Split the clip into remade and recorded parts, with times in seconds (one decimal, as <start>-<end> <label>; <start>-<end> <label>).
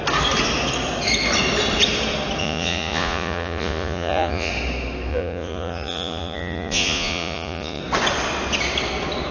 0.0-2.4 recorded; 2.4-4.5 remade; 4.5-5.1 recorded; 5.1-7.8 remade; 7.8-9.3 recorded